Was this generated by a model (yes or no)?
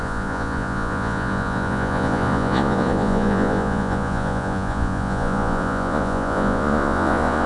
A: yes